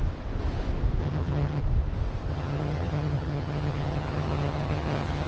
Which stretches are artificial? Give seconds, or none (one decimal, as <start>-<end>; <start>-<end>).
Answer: 1.0-1.6; 2.3-5.3

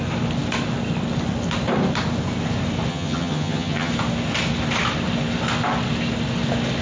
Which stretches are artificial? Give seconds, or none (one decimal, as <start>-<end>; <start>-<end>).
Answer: 2.9-3.9